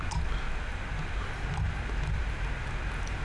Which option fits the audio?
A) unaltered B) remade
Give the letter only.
A